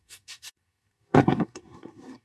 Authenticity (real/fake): fake